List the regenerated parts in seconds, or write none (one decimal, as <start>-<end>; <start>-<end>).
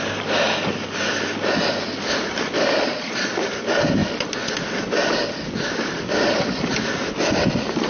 2.8-3.3